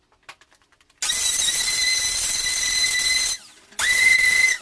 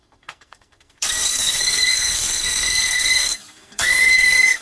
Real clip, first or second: first